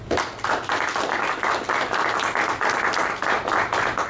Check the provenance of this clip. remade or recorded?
recorded